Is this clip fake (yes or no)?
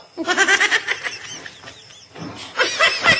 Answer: no